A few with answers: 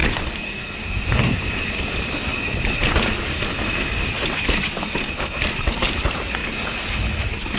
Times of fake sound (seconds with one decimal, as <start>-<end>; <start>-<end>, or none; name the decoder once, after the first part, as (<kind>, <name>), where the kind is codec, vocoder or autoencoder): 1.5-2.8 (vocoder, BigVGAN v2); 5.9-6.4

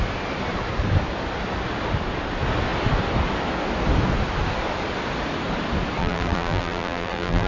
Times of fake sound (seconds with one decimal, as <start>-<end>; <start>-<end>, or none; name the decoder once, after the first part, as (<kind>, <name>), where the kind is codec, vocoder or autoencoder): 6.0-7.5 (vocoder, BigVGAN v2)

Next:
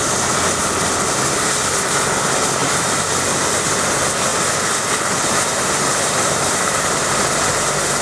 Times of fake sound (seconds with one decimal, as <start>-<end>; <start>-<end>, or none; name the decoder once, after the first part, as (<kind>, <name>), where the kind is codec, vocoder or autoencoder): 2.6-3.1 (vocoder, BigVGAN v2); 5.5-7.2